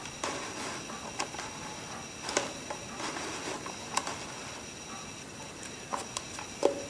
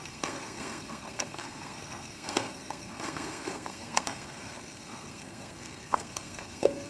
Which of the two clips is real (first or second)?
first